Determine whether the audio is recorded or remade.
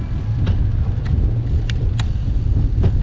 recorded